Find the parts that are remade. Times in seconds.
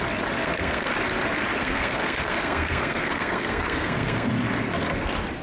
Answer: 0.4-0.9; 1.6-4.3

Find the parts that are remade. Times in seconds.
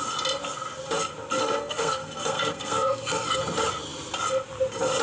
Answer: 1.4-3.4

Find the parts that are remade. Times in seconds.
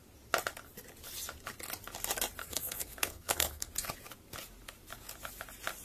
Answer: 2.4-3.7